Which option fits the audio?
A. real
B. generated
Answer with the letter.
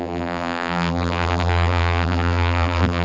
B